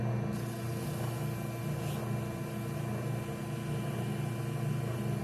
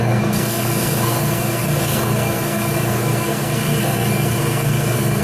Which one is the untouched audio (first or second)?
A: first